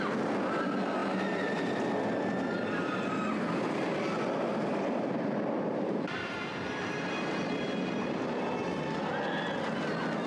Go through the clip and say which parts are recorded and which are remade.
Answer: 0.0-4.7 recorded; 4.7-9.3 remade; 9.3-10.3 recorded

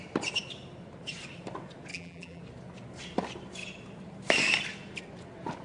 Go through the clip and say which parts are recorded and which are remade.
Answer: 0.0-1.9 recorded; 1.9-2.4 remade; 2.4-5.6 recorded

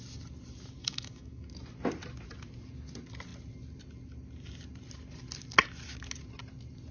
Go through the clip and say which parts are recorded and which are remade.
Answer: 0.0-0.8 recorded; 0.8-1.5 remade; 1.5-6.9 recorded

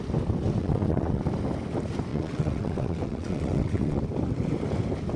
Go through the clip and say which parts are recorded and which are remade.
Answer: 0.0-0.6 recorded; 0.6-1.2 remade; 1.2-2.1 recorded; 2.1-4.0 remade; 4.0-5.2 recorded